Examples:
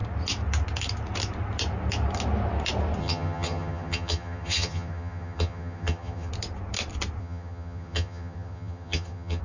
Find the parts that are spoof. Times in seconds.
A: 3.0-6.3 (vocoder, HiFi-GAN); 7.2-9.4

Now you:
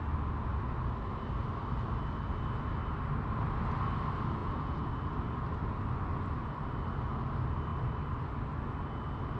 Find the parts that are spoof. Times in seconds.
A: 4.4-4.9 (vocoder, Vocos)

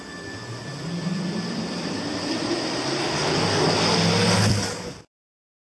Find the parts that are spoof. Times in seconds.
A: 3.0-3.7 (codec, DAC)

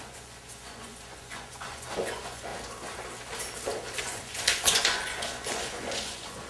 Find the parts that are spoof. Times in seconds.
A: 0.0-2.5 (vocoder, Vocos); 4.0-6.5

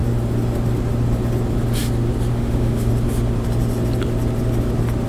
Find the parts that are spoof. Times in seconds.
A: 2.3-2.9 (autoencoder, DAC-VAE)

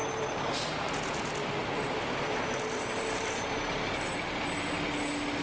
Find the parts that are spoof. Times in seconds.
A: 1.6-3.9 (vocoder, BigVGAN v2)

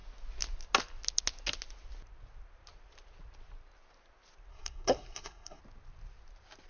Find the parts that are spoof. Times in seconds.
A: 4.5-5.6 (codec, SNAC)

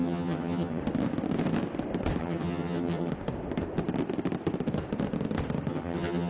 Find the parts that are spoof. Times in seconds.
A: 0.0-0.8 (vocoder, HiFi-GAN); 2.2-3.1; 5.7-6.3